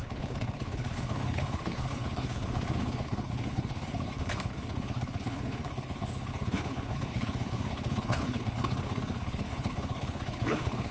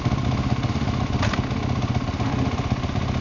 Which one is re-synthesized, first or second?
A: first